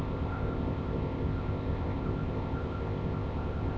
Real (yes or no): no